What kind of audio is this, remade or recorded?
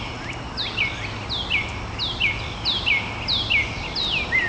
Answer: recorded